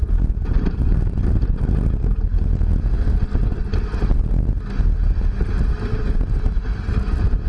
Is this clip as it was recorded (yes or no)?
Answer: yes